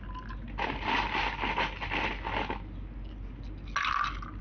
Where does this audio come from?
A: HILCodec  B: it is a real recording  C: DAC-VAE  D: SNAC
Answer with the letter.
B